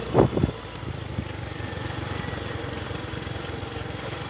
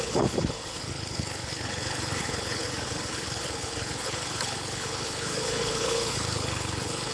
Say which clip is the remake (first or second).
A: second